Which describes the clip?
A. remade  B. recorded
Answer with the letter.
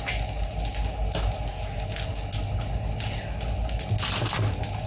B